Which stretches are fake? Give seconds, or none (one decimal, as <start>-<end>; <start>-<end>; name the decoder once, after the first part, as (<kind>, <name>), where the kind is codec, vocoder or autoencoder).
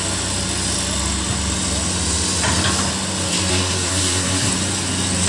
3.5-4.5 (codec, SNAC)